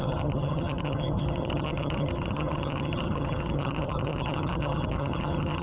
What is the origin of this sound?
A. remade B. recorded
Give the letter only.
A